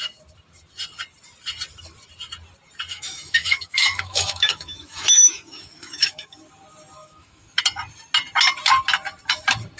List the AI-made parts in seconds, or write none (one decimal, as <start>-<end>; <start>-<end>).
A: 2.9-6.4; 7.0-7.6